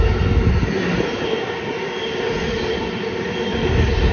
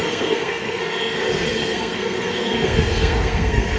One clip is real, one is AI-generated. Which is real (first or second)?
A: first